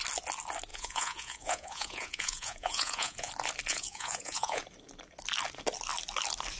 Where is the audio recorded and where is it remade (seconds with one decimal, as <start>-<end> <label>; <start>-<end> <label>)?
0.0-0.7 recorded; 0.7-3.3 remade; 3.3-3.7 recorded; 3.7-4.6 remade; 4.6-6.6 recorded